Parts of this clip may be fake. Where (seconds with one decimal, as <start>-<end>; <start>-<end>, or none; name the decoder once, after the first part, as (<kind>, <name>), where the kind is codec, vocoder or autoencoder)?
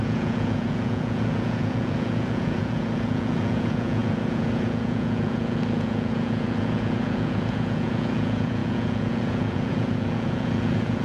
0.0-11.0 (vocoder, Vocos)